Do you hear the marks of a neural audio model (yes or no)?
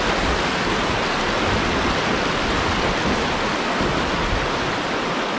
no